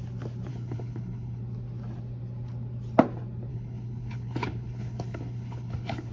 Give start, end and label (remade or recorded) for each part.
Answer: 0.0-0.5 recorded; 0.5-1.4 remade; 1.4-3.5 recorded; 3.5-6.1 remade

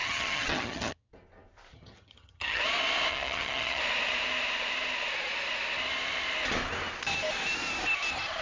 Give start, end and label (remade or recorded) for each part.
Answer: 0.0-1.1 remade; 1.1-1.7 recorded; 1.7-2.6 remade; 2.6-3.1 recorded; 3.1-3.8 remade; 3.8-8.4 recorded

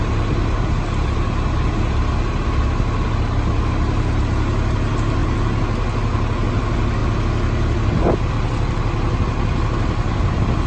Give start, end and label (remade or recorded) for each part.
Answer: 0.0-10.7 recorded

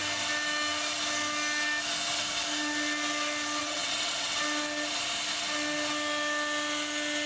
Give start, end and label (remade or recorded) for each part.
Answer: 0.0-3.6 recorded; 3.6-4.4 remade; 4.4-7.3 recorded